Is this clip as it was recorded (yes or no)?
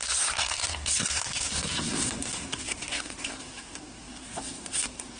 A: no